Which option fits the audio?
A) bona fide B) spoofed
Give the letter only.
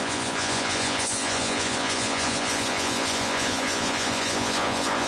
B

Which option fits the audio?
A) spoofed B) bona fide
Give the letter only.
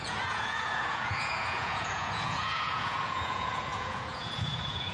A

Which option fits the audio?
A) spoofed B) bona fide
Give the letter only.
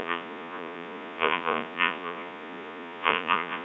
A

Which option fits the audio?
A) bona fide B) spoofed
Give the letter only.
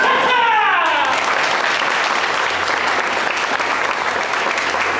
A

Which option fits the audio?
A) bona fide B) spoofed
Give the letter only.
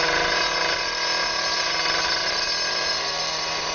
A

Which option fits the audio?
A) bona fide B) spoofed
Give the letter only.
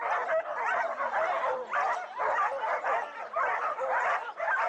A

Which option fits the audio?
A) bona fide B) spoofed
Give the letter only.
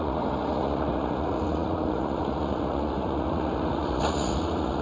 B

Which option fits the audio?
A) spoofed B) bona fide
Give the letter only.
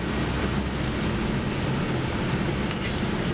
B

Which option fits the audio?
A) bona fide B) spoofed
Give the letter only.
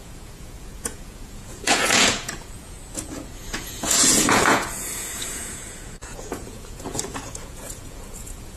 B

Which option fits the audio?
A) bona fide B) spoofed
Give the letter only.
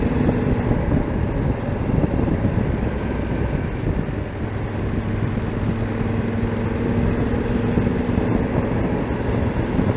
A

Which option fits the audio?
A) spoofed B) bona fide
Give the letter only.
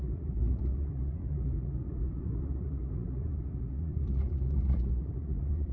A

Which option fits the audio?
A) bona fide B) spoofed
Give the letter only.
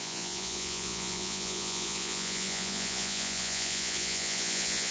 B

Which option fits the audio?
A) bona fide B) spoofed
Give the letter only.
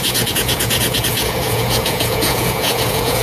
B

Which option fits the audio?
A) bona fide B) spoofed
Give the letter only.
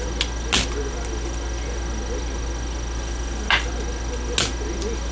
A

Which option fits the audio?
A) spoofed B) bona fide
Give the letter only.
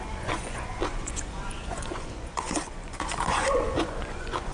A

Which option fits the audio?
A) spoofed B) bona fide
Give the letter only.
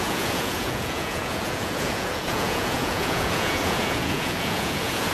A